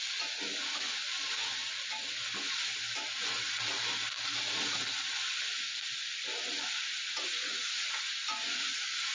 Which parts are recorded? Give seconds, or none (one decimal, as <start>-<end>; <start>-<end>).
0.0-7.0; 8.2-9.1